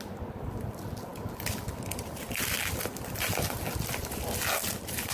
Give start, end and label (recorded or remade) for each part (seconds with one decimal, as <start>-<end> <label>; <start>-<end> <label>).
0.0-5.1 recorded